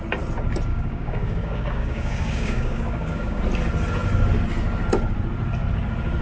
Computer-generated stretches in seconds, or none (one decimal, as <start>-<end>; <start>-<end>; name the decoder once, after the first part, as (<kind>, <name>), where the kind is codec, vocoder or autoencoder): 0.7-3.4 (codec, DAC)